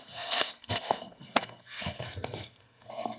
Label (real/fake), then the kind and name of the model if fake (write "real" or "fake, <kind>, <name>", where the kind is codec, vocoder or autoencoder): fake, codec, SNAC